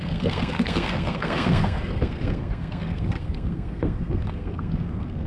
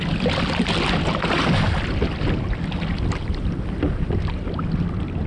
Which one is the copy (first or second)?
first